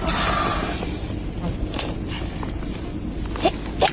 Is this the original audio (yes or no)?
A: yes